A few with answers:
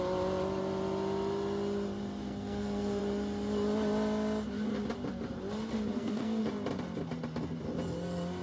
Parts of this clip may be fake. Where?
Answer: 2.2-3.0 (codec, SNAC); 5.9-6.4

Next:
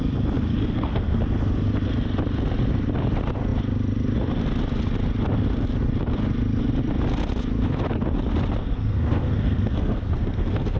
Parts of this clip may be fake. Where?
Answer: 0.6-1.2 (codec, SNAC); 8.6-10.8

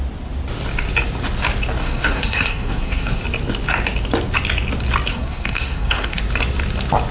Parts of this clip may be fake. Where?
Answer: 1.8-3.2 (codec, SNAC); 5.1-6.2

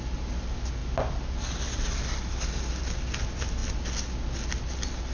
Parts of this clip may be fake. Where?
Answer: none